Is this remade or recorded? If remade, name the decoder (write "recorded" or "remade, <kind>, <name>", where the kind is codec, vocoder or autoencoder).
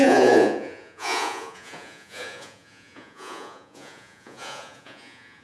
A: remade, vocoder, Vocos